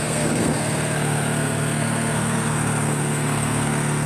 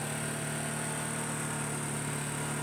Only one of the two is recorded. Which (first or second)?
second